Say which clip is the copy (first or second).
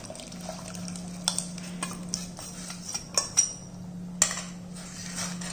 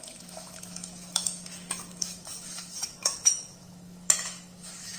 second